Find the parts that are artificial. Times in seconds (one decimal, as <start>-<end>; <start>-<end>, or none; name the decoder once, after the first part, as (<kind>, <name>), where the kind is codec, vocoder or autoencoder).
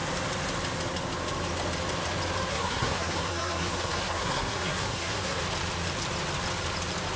2.5-5.4 (codec, SNAC)